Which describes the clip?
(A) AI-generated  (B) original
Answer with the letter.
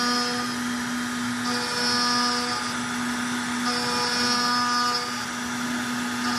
B